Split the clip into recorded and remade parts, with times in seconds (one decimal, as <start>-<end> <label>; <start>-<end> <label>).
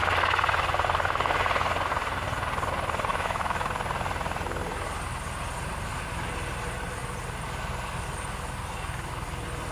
0.0-3.1 recorded; 3.1-3.7 remade; 3.7-9.7 recorded